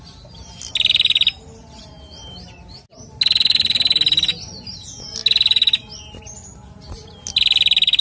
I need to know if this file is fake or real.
real